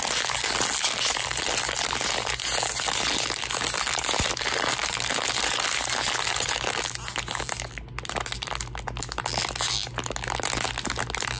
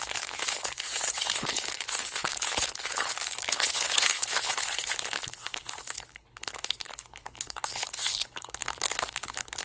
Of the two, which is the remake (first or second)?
second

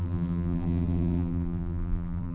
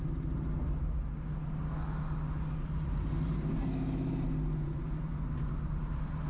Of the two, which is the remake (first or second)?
first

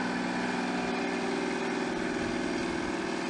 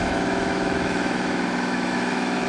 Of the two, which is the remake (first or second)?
second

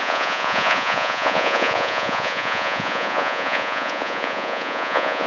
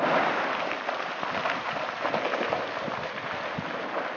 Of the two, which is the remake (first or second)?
first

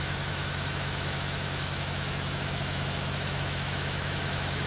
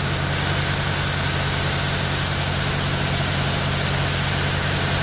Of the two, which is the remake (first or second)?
first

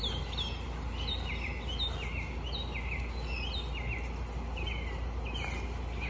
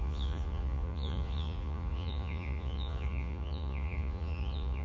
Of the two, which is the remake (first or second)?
second